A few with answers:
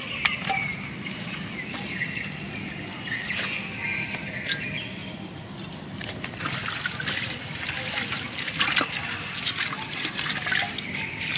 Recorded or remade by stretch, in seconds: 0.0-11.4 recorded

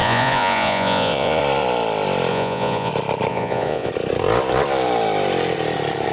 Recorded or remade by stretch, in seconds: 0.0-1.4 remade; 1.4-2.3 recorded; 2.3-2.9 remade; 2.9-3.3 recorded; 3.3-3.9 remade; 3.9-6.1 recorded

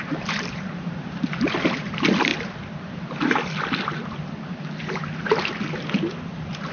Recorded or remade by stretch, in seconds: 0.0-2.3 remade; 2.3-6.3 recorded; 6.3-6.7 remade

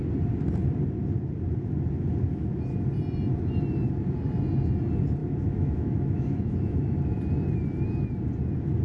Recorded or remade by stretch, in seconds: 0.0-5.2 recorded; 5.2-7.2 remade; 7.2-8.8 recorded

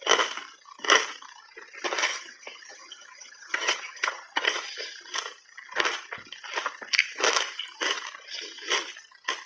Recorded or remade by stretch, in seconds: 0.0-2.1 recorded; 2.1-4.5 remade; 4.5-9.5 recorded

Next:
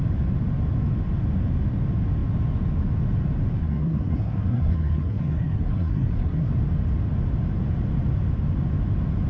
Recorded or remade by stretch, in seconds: 0.0-3.6 recorded; 3.6-6.5 remade; 6.5-9.3 recorded

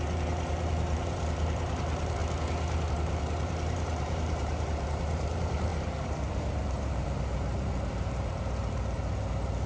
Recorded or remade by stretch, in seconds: 0.0-2.2 remade; 2.2-2.9 recorded; 2.9-9.7 remade